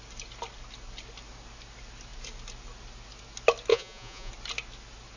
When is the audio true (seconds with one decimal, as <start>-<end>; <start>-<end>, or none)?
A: 0.0-3.7; 4.3-5.2